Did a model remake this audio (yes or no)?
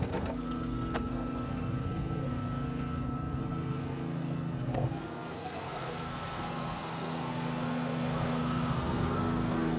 yes